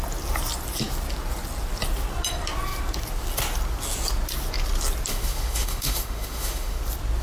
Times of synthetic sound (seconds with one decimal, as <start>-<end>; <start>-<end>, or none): 5.1-6.8